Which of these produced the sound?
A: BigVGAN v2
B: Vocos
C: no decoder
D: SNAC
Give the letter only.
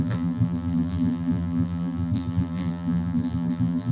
A